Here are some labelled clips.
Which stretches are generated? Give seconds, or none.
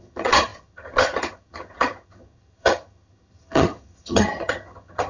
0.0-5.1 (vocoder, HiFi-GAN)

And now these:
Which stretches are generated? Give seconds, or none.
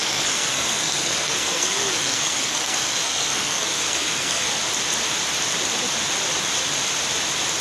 0.0-4.6 (codec, SNAC)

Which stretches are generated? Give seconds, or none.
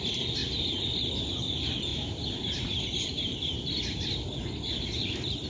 0.4-1.1 (vocoder, BigVGAN v2); 1.9-5.5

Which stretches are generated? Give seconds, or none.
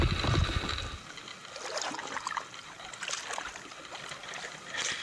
none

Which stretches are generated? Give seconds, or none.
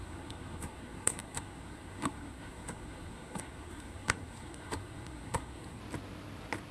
0.0-5.8 (codec, SNAC)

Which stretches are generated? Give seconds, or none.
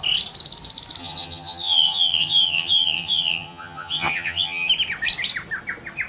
1.0-4.7 (vocoder, HiFi-GAN)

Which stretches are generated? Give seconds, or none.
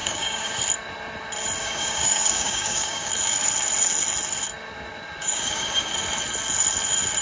0.0-0.6 (codec, DAC); 1.6-3.1; 5.2-5.9